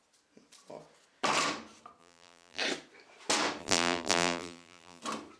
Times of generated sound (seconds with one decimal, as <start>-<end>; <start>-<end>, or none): 2.0-2.6; 3.6-5.0